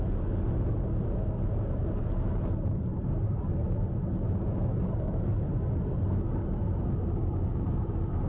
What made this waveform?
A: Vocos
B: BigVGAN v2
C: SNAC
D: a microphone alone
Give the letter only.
D